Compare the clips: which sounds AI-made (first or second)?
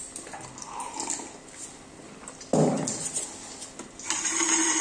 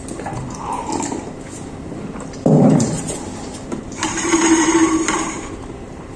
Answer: second